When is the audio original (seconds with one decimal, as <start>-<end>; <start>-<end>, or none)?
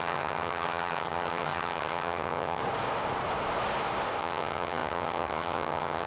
2.6-4.2